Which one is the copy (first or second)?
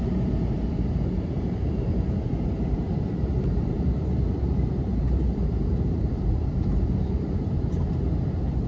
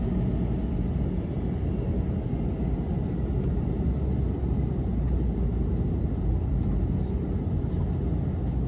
first